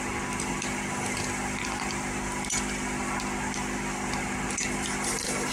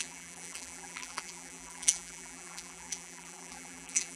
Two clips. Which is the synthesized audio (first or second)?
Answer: second